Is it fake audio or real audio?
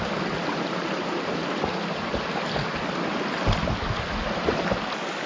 real